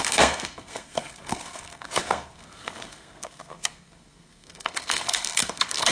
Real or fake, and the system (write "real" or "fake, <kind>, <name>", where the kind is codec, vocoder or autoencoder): fake, codec, SNAC